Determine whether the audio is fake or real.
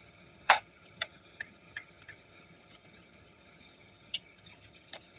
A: fake